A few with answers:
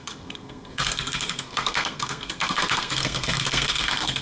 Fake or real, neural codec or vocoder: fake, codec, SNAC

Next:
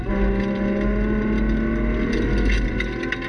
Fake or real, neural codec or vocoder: real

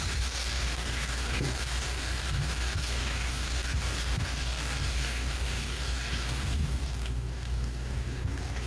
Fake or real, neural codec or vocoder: fake, codec, DAC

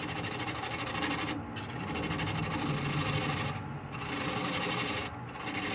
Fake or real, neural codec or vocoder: real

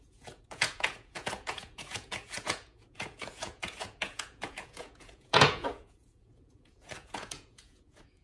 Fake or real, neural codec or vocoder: fake, vocoder, Vocos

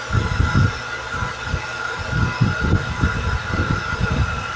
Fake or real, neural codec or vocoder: real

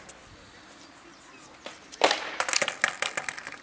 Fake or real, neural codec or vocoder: real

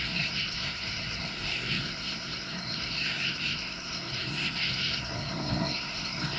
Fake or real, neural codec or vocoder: fake, codec, SNAC